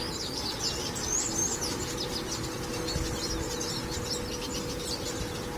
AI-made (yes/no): no